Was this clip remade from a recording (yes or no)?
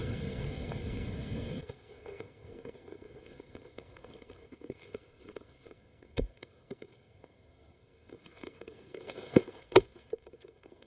yes